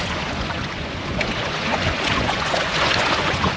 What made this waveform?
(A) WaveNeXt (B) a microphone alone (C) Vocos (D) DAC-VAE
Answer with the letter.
C